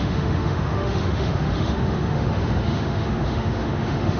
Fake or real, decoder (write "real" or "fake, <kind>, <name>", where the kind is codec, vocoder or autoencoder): fake, autoencoder, DAC-VAE